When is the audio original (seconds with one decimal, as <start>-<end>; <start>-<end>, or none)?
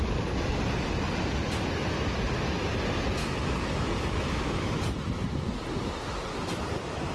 0.0-3.2; 4.7-7.1